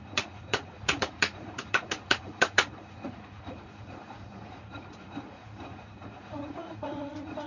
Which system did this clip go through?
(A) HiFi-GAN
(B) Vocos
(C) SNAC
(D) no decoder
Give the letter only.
B